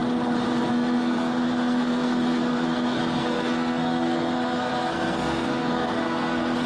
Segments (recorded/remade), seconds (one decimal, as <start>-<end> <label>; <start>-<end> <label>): 0.0-0.7 recorded; 0.7-6.7 remade